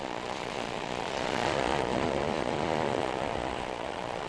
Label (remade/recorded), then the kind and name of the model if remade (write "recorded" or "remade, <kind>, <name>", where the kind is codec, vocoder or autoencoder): remade, vocoder, Vocos